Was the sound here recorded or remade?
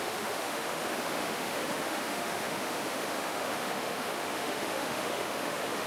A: remade